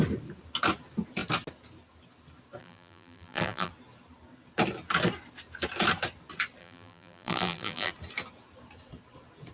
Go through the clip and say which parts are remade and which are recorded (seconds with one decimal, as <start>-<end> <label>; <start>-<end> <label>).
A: 0.0-2.6 recorded; 2.6-3.7 remade; 3.7-6.6 recorded; 6.6-7.9 remade; 7.9-9.5 recorded